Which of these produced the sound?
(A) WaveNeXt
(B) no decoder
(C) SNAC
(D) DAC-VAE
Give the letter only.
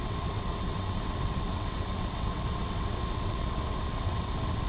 A